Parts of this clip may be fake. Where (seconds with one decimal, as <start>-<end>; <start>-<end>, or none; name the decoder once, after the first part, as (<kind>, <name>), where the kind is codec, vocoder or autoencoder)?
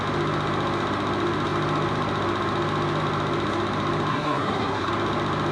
4.1-4.9 (codec, SNAC)